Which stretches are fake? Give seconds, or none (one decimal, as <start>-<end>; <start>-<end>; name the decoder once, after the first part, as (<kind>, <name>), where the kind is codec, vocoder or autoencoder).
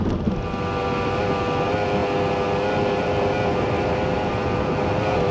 none